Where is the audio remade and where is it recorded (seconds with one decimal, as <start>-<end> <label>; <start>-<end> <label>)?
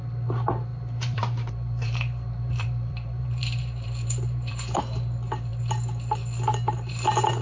0.0-0.7 recorded; 0.7-4.8 remade; 4.8-7.4 recorded